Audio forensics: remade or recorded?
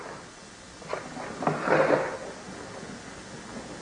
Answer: recorded